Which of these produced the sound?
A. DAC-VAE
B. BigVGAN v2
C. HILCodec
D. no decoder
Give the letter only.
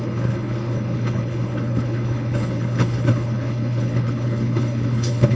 C